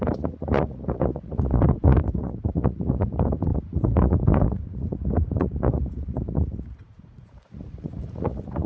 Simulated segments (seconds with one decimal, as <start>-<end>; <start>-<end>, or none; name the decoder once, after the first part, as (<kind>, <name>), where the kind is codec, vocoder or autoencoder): 0.0-8.7 (vocoder, Vocos)